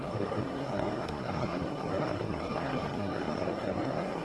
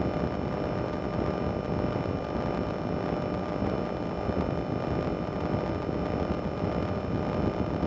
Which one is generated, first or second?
first